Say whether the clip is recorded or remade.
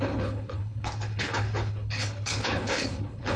remade